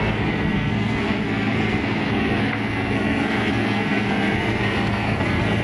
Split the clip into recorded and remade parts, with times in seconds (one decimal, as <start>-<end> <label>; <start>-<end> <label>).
0.0-5.6 remade